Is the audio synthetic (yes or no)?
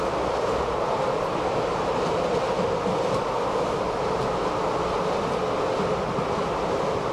no